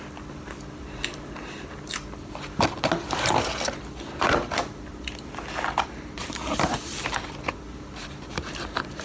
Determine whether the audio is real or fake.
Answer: real